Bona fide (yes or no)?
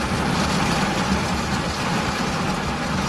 yes